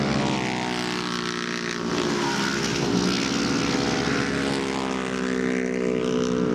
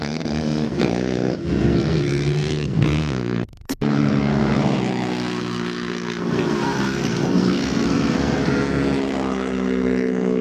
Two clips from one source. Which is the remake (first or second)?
second